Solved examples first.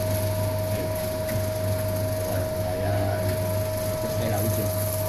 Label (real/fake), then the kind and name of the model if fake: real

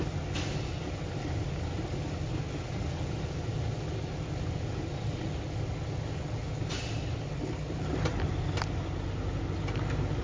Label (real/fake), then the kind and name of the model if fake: real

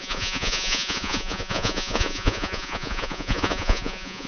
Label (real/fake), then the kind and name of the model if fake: fake, vocoder, Vocos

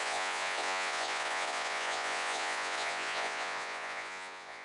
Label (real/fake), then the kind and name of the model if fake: fake, vocoder, Vocos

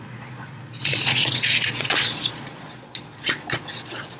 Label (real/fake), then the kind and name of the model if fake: fake, vocoder, Vocos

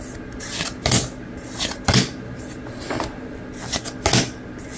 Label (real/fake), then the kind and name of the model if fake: real